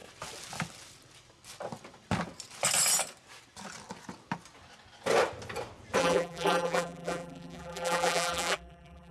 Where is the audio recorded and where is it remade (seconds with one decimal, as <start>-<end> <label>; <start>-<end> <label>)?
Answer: 0.0-6.0 recorded; 6.0-9.1 remade